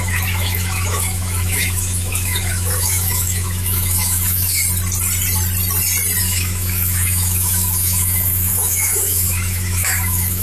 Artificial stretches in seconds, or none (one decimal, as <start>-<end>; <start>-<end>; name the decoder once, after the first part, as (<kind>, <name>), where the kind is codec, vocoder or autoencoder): 0.0-4.6 (autoencoder, DAC-VAE); 6.2-10.4